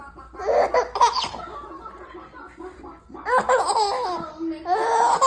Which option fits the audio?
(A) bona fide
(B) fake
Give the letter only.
A